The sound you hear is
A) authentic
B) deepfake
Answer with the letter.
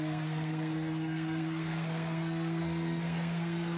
B